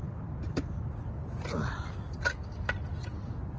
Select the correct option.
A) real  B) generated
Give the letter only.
A